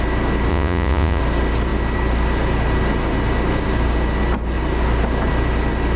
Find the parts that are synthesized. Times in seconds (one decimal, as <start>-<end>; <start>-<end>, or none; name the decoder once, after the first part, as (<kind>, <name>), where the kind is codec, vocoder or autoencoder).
0.5-1.2 (vocoder, Vocos)